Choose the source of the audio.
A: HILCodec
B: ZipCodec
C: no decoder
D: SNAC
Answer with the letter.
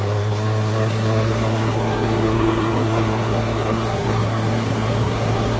D